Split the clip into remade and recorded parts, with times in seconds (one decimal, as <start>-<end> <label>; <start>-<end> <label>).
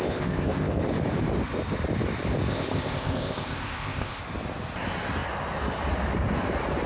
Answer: 0.0-0.8 remade; 0.8-2.5 recorded; 2.5-4.2 remade; 4.2-6.9 recorded